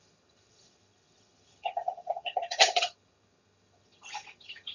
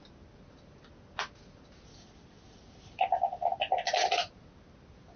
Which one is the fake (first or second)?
first